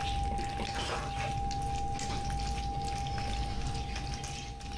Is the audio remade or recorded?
recorded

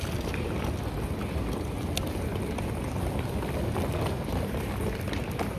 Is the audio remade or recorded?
recorded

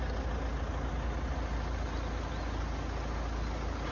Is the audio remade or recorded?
recorded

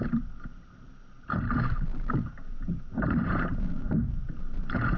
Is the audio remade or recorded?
remade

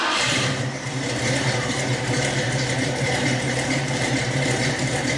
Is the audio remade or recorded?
remade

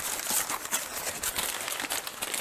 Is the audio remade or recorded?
recorded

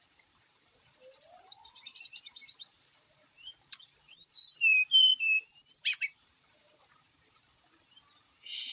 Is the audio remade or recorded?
remade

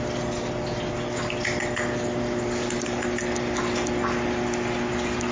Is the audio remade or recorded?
recorded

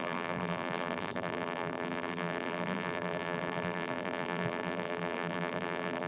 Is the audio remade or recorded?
remade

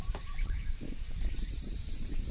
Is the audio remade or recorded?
remade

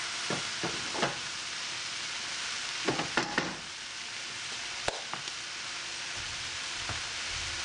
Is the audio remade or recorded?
recorded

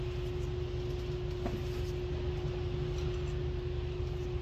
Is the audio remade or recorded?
recorded